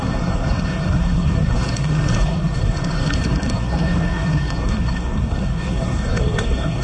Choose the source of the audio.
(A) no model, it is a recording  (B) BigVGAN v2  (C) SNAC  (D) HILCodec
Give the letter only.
C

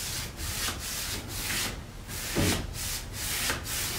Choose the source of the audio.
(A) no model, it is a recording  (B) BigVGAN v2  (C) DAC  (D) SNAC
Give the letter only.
A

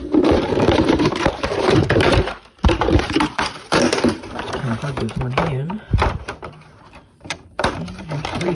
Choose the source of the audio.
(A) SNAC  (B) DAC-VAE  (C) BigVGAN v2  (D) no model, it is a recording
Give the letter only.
C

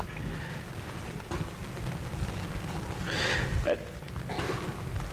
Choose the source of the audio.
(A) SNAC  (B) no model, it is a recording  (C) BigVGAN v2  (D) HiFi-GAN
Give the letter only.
B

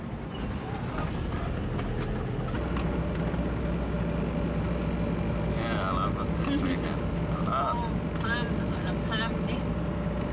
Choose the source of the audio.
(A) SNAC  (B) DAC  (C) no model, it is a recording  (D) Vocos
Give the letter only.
C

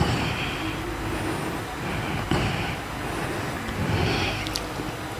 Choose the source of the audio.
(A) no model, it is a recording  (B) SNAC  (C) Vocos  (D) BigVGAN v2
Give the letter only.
A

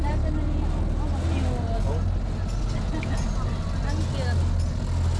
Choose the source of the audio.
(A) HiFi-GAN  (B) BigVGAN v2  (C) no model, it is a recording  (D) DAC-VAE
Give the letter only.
C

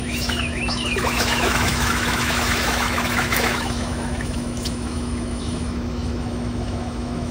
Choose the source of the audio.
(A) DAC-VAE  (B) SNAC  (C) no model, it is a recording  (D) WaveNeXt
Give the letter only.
A